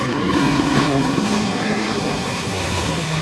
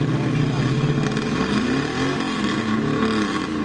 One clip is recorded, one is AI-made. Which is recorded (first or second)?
second